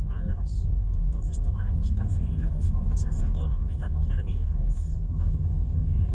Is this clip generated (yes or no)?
yes